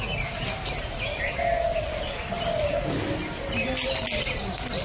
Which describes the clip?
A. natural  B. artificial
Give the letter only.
A